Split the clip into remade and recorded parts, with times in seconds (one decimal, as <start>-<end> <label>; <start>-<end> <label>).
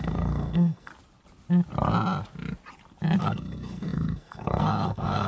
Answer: 0.0-0.9 remade; 0.9-3.2 recorded; 3.2-5.3 remade